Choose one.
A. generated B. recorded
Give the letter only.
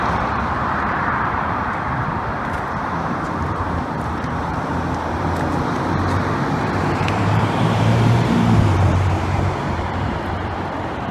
A